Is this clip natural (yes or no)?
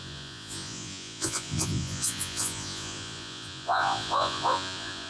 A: no